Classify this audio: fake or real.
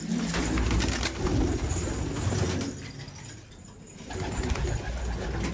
real